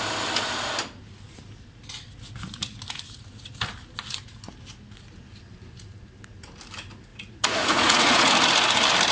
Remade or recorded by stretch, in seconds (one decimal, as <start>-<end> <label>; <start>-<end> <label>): 0.0-7.1 recorded; 7.1-8.3 remade; 8.3-9.1 recorded